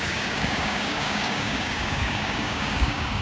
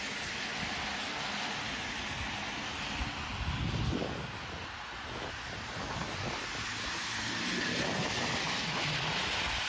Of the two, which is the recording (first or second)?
second